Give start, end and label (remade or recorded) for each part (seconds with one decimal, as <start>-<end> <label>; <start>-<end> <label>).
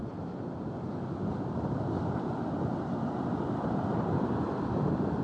0.0-3.9 recorded; 3.9-4.5 remade; 4.5-5.2 recorded